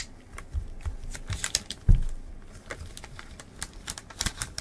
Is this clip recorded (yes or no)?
yes